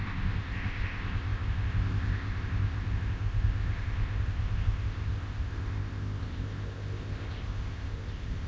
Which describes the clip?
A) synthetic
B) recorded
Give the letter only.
A